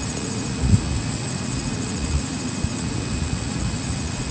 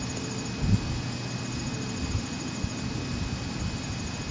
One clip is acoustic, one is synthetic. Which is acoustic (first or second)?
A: second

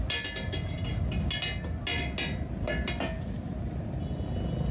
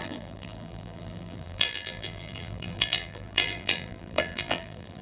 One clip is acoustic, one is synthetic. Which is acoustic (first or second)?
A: first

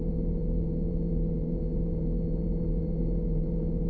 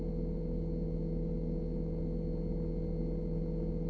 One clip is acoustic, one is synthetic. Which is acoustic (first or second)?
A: second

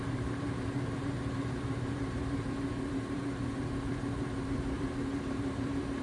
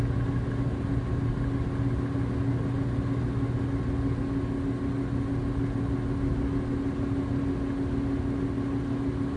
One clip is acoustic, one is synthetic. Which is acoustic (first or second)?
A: second